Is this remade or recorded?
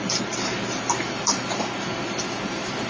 recorded